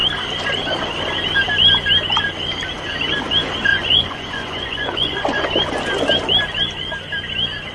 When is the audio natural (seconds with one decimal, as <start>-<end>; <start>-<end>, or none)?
0.0-3.7; 5.5-7.7